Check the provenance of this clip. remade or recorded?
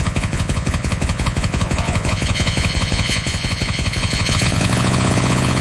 remade